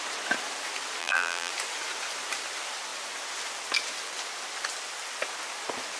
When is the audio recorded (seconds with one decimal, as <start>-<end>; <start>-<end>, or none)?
0.0-1.0; 1.5-6.0